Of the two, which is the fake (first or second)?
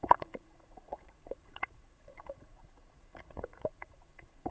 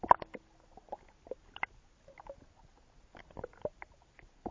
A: first